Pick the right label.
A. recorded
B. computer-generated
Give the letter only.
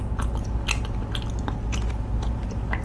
A